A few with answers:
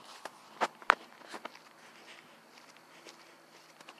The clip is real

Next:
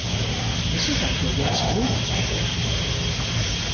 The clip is real